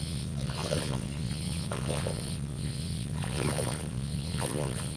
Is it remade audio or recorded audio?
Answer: remade